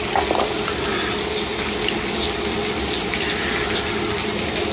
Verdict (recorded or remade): recorded